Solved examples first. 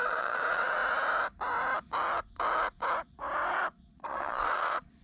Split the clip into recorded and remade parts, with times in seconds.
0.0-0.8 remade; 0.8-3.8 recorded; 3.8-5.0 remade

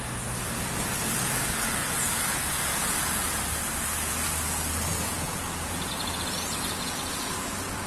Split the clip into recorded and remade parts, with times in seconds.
0.0-1.8 recorded; 1.8-3.4 remade; 3.4-4.9 recorded; 4.9-7.3 remade; 7.3-7.9 recorded

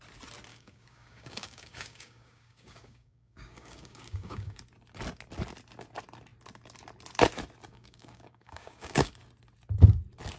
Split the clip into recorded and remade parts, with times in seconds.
0.0-0.5 recorded; 0.5-4.6 remade; 4.6-7.7 recorded; 7.7-9.1 remade; 9.1-10.4 recorded

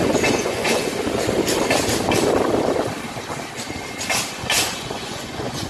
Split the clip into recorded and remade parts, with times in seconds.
0.0-0.9 remade; 0.9-4.3 recorded; 4.3-5.7 remade

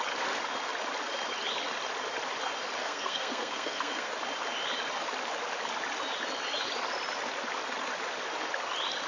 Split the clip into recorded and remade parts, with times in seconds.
0.0-2.8 recorded; 2.8-4.1 remade; 4.1-9.1 recorded

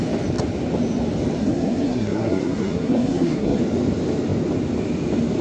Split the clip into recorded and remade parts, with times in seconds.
0.0-1.4 recorded; 1.4-3.6 remade; 3.6-5.4 recorded

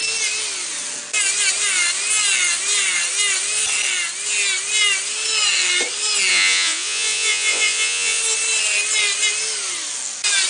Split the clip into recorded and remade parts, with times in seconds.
0.0-6.3 recorded; 6.3-8.2 remade; 8.2-10.5 recorded